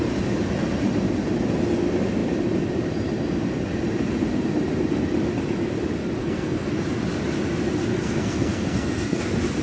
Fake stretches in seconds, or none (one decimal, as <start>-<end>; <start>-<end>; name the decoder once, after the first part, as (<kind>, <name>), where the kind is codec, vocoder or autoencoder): 6.2-6.7 (codec, SNAC); 7.9-9.2